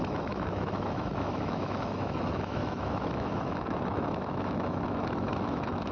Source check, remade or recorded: remade